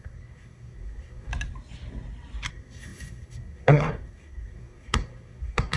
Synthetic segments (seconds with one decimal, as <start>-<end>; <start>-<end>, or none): 0.0-1.3; 2.5-5.8